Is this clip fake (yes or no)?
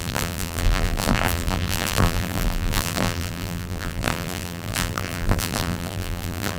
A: yes